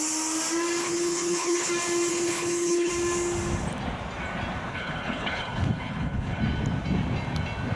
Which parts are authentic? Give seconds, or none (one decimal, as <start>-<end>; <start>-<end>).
0.0-0.8; 1.7-2.1; 2.9-4.7; 6.4-7.8